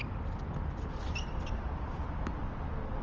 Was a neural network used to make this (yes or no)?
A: no